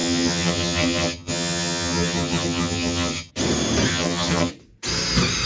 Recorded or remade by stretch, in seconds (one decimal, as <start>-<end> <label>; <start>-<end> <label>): 0.0-3.3 remade; 3.3-3.9 recorded; 3.9-4.5 remade; 4.5-5.5 recorded